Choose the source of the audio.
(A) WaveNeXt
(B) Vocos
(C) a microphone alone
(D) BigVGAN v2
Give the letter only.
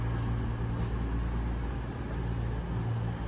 C